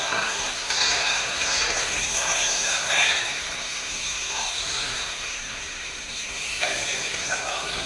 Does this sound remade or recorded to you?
remade